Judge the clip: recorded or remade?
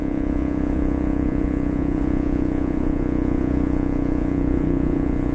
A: remade